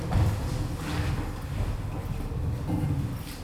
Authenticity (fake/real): real